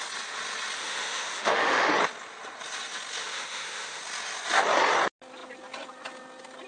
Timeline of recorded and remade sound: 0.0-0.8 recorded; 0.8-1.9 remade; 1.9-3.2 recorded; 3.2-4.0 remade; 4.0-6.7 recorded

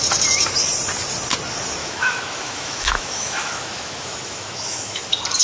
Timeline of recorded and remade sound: 0.0-1.8 recorded; 1.8-5.0 remade; 5.0-5.4 recorded

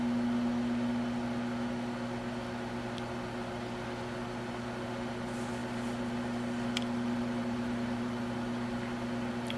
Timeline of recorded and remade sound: 0.0-5.6 recorded; 5.6-8.3 remade; 8.3-9.6 recorded